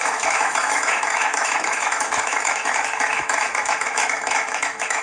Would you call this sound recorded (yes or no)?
no